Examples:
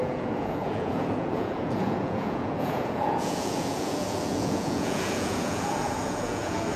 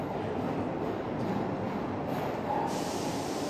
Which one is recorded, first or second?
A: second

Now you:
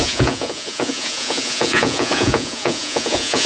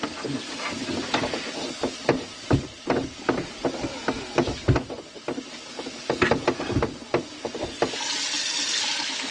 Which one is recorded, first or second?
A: second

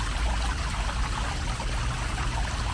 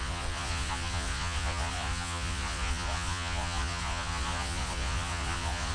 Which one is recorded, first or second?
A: first